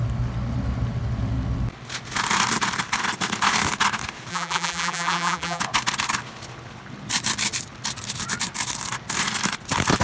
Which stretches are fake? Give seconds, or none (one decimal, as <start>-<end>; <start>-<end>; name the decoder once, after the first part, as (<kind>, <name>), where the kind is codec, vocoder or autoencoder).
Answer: 4.3-5.6 (vocoder, BigVGAN v2)